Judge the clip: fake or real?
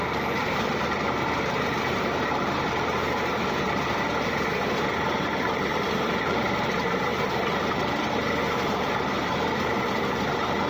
fake